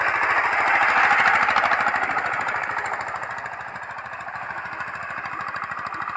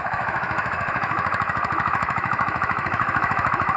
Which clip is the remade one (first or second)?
second